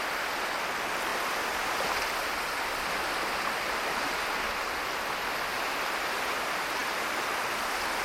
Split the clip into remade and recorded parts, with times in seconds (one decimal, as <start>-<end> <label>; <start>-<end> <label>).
0.0-8.0 recorded